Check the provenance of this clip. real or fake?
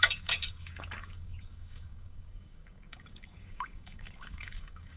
fake